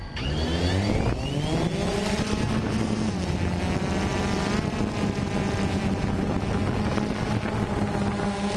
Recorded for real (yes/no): yes